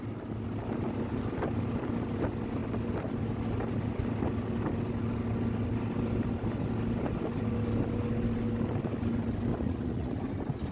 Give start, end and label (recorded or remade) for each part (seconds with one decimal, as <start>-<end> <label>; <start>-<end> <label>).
0.0-9.5 recorded; 9.5-10.2 remade; 10.2-10.7 recorded